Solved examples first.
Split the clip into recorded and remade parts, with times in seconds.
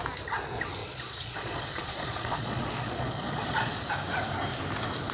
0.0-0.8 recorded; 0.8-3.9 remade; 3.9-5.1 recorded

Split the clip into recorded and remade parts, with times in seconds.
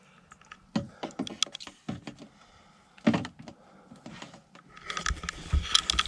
0.0-6.1 recorded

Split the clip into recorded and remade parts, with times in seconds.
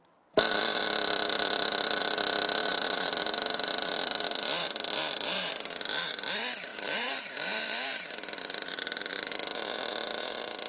0.0-2.6 recorded; 2.6-3.1 remade; 3.1-5.0 recorded; 5.0-5.5 remade; 5.5-6.7 recorded; 6.7-8.0 remade; 8.0-10.7 recorded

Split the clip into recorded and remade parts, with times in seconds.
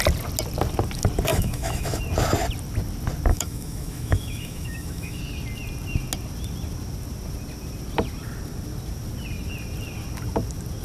0.0-1.3 recorded; 1.3-2.0 remade; 2.0-3.3 recorded; 3.3-5.2 remade; 5.2-10.8 recorded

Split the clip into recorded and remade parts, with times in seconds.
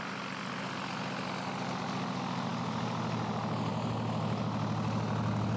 0.0-5.6 recorded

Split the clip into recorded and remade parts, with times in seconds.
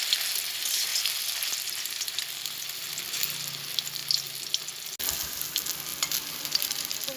0.0-0.9 recorded; 0.9-2.9 remade; 2.9-7.2 recorded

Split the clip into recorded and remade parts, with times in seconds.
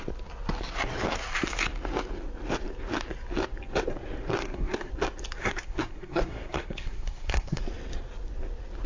0.0-4.4 recorded; 4.4-4.9 remade; 4.9-5.4 recorded; 5.4-7.6 remade; 7.6-8.9 recorded